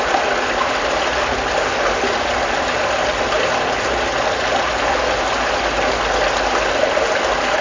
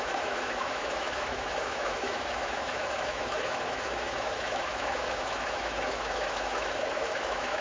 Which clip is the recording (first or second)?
first